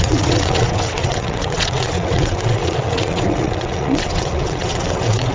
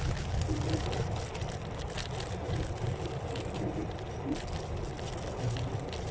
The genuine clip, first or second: second